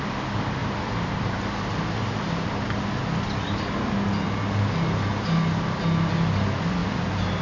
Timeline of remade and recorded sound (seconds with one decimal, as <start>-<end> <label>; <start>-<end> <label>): 0.0-0.6 recorded; 0.6-2.5 remade; 2.5-7.4 recorded